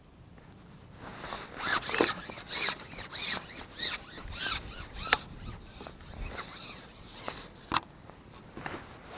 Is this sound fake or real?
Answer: real